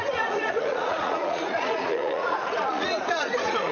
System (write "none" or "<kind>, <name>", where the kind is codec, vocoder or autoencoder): vocoder, Vocos